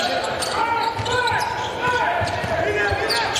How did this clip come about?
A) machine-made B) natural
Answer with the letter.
B